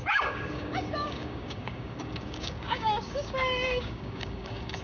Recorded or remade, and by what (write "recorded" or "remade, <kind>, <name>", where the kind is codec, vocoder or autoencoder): remade, codec, DAC